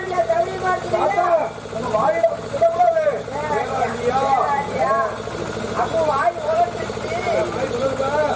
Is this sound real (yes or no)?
yes